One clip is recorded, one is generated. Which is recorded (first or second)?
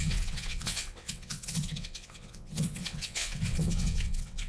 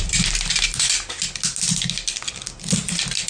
second